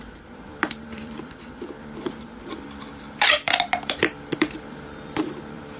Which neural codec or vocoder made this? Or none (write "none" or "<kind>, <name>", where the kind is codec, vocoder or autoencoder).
vocoder, BigVGAN v2